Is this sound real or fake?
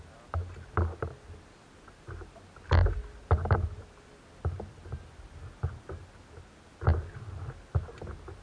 real